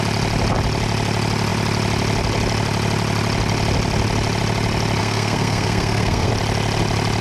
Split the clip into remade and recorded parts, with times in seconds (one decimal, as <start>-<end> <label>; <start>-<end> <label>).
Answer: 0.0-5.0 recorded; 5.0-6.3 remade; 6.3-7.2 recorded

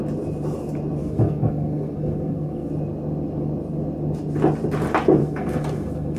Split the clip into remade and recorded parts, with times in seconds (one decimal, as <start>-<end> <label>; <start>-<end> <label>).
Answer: 0.0-1.0 recorded; 1.0-2.7 remade; 2.7-5.2 recorded; 5.2-6.2 remade

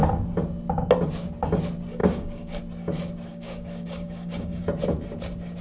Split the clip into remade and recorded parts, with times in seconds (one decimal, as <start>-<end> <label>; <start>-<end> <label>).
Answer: 0.0-2.0 recorded; 2.0-2.6 remade; 2.6-3.3 recorded; 3.3-4.6 remade; 4.6-5.6 recorded